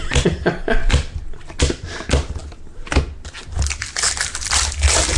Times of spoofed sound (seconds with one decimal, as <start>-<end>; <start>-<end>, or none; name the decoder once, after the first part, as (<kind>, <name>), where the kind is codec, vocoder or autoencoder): none